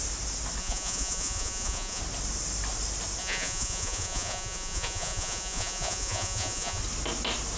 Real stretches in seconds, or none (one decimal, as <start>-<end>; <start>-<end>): 0.0-0.6; 2.0-3.2; 6.8-7.6